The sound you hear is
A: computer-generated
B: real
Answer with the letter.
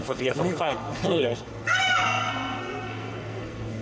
A